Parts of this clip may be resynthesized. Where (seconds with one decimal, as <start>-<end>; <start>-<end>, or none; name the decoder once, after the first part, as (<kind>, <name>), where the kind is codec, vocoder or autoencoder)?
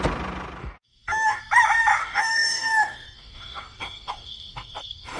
0.6-1.4 (codec, DAC); 2.0-5.2